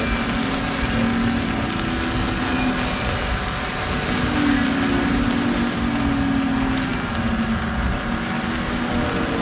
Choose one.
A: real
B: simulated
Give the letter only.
A